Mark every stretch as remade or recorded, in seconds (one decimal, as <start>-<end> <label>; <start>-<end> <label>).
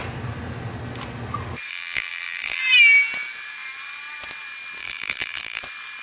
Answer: 0.0-1.7 recorded; 1.7-2.6 remade; 2.6-4.8 recorded; 4.8-5.6 remade; 5.6-6.0 recorded